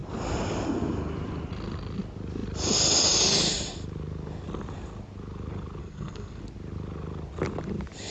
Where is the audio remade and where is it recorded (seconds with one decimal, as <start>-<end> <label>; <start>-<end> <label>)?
0.0-5.8 recorded; 5.8-6.4 remade; 6.4-8.1 recorded